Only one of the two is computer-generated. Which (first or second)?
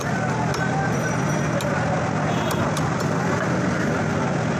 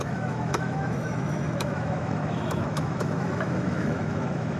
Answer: second